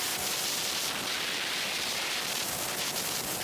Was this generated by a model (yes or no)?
no